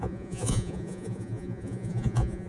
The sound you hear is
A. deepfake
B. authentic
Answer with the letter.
A